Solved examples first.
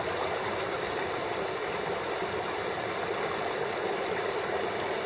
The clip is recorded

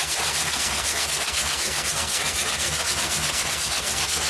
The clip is remade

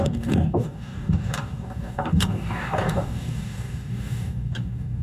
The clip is remade